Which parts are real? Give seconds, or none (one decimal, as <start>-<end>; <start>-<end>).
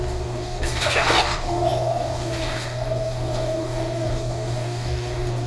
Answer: none